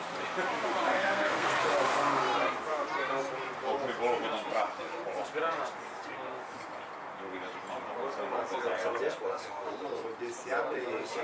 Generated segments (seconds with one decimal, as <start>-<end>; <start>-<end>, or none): 0.9-1.6